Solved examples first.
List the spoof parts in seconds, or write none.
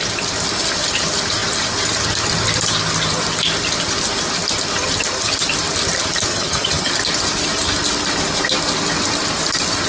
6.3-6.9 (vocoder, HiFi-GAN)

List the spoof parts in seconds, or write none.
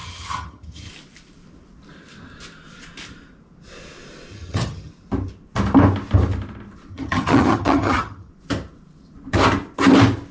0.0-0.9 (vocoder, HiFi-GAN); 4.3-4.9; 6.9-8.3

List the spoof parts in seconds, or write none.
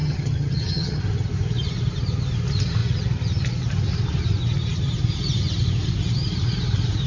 0.0-1.0 (vocoder, HiFi-GAN)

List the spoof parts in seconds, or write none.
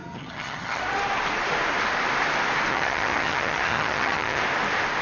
0.0-0.8 (vocoder, HiFi-GAN); 2.7-4.4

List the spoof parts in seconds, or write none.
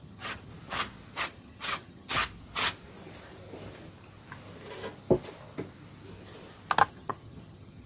0.0-0.5 (vocoder, HiFi-GAN); 1.2-2.2; 6.9-7.9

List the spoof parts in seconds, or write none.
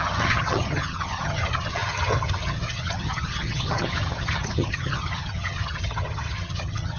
0.0-7.0 (vocoder, HiFi-GAN)